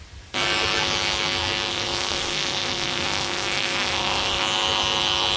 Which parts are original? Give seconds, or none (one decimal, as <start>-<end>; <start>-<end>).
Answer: 0.0-1.7; 4.4-5.4